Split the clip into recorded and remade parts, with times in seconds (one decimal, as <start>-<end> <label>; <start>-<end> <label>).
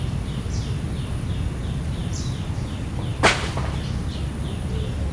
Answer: 0.0-5.1 recorded